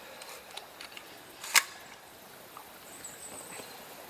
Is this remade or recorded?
remade